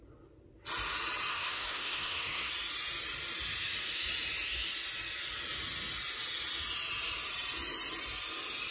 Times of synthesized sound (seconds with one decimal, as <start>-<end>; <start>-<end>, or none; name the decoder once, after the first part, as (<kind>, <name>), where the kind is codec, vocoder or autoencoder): 1.3-2.5 (codec, SNAC)